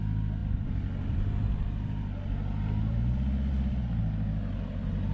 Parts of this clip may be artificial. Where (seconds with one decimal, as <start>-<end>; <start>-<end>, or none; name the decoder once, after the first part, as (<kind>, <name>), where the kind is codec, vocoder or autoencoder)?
none